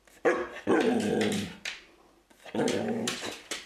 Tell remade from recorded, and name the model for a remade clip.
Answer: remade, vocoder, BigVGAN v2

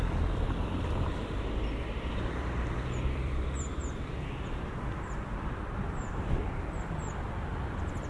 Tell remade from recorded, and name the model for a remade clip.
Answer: remade, vocoder, BigVGAN v2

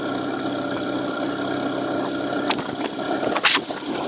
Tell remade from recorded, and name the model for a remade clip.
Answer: recorded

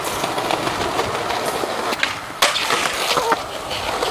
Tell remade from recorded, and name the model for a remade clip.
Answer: recorded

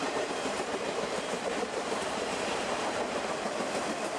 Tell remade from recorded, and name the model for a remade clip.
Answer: remade, vocoder, BigVGAN v2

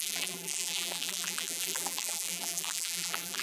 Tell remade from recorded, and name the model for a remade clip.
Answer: remade, vocoder, BigVGAN v2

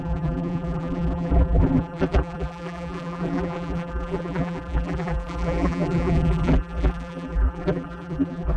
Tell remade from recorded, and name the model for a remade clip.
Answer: remade, vocoder, BigVGAN v2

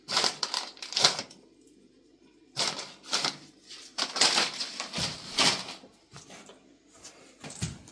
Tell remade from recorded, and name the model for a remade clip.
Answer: recorded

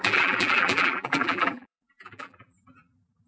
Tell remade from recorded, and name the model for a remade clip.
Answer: remade, vocoder, BigVGAN v2